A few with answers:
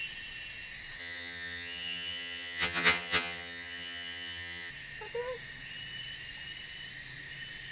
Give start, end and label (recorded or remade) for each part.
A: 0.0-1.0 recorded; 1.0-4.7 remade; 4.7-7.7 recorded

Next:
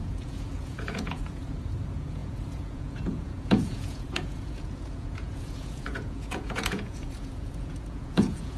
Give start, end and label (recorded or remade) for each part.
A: 0.0-8.6 remade

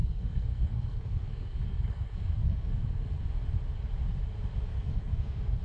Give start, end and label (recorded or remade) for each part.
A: 0.0-2.8 remade; 2.8-4.7 recorded; 4.7-5.6 remade

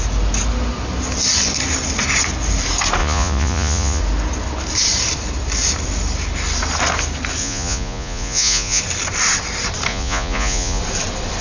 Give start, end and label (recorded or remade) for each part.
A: 0.0-3.0 recorded; 3.0-4.0 remade; 4.0-7.4 recorded; 7.4-8.8 remade; 8.8-9.9 recorded; 9.9-10.8 remade; 10.8-11.4 recorded

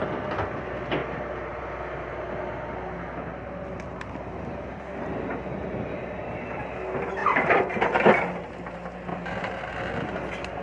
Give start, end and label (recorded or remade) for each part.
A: 0.0-1.0 recorded; 1.0-1.6 remade; 1.6-3.9 recorded; 3.9-4.7 remade; 4.7-7.2 recorded; 7.2-8.5 remade; 8.5-9.1 recorded; 9.1-9.7 remade; 9.7-10.6 recorded